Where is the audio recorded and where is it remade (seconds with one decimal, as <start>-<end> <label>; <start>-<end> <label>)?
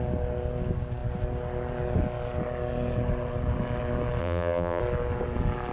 0.0-4.2 recorded; 4.2-4.8 remade; 4.8-5.7 recorded